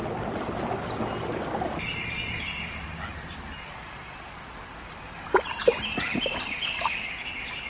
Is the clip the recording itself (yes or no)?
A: yes